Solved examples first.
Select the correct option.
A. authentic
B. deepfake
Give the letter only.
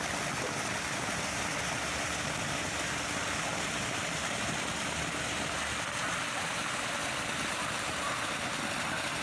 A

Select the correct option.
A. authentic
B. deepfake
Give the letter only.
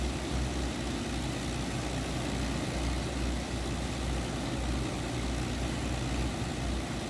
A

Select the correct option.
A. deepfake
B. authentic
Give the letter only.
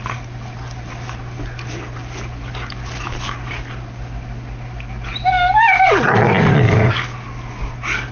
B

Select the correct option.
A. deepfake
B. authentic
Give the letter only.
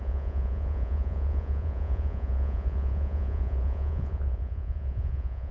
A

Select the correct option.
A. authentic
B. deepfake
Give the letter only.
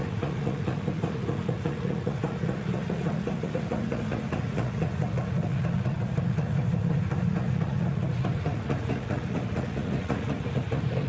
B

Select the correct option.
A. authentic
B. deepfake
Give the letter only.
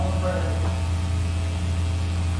A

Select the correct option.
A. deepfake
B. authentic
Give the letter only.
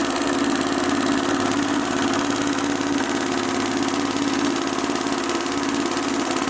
B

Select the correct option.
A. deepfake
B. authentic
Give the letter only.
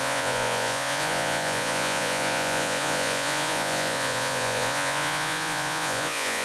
A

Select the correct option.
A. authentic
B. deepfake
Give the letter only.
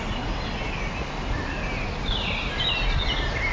A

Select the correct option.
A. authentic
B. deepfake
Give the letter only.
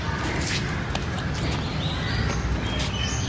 A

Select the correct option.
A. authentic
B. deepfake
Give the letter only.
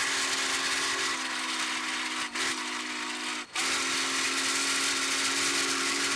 A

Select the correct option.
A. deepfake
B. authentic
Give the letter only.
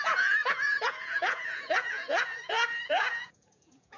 A